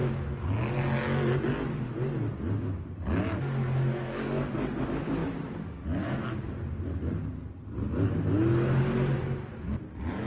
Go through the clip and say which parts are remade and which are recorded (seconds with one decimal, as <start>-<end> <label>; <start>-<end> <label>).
0.0-10.3 recorded